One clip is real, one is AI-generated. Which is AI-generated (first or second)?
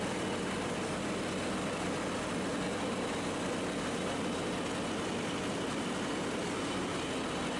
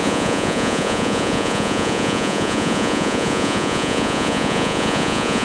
second